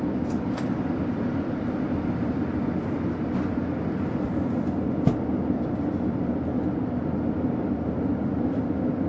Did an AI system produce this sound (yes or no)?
no